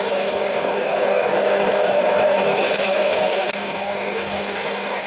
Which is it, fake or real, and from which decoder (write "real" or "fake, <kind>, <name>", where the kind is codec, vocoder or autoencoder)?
fake, codec, DAC